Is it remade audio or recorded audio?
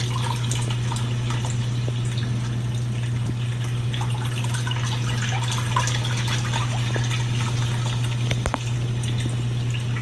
recorded